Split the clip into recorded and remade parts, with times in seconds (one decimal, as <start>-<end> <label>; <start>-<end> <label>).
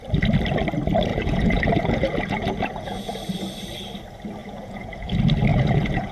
0.0-1.1 recorded; 1.1-3.1 remade; 3.1-4.4 recorded; 4.4-5.1 remade; 5.1-5.5 recorded; 5.5-6.1 remade